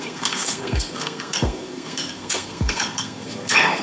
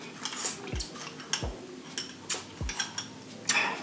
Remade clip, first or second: first